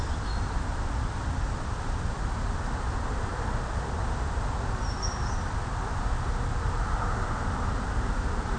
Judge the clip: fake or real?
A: real